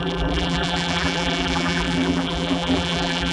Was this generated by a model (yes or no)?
yes